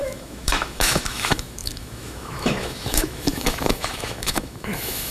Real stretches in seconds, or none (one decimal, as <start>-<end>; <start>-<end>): none